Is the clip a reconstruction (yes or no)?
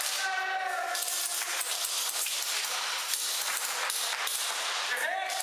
no